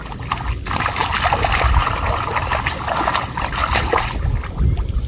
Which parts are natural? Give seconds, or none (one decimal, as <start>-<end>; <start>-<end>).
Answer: 0.0-5.1